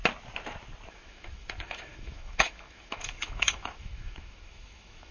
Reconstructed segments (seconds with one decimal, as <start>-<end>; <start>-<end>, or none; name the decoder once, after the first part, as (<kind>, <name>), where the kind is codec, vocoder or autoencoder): 0.9-5.1 (autoencoder, DAC-VAE)